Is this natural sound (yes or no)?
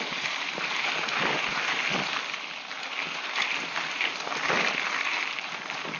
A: yes